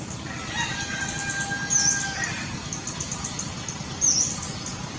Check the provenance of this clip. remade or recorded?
recorded